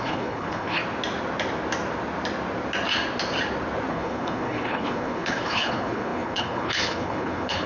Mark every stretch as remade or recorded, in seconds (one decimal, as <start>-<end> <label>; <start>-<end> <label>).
0.0-0.8 remade; 0.8-3.9 recorded; 3.9-7.7 remade

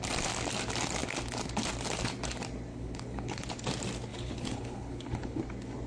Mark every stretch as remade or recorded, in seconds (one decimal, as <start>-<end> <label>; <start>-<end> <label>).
0.0-2.7 recorded; 2.7-3.5 remade; 3.5-4.1 recorded; 4.1-5.4 remade; 5.4-5.9 recorded

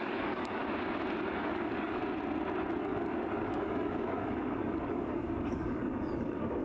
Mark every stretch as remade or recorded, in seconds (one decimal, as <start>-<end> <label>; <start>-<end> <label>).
0.0-0.6 remade; 0.6-1.3 recorded; 1.3-2.0 remade; 2.0-2.8 recorded; 2.8-6.6 remade

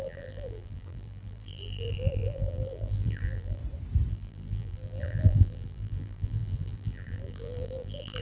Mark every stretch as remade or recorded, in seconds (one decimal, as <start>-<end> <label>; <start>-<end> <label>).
0.0-3.6 remade; 3.6-4.1 recorded; 4.1-8.2 remade

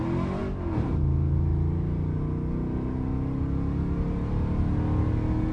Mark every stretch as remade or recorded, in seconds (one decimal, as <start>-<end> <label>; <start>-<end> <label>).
0.0-5.5 recorded

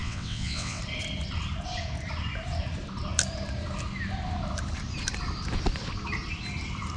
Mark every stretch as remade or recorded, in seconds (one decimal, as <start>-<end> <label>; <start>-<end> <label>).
0.0-0.8 remade; 0.8-7.0 recorded

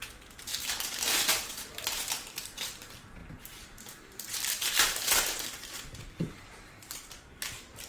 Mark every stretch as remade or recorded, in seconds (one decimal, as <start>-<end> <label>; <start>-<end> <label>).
0.0-7.9 remade

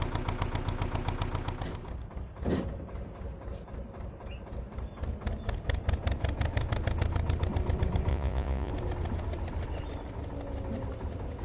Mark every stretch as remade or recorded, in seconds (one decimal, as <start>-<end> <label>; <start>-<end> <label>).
0.0-8.1 recorded; 8.1-8.7 remade; 8.7-11.4 recorded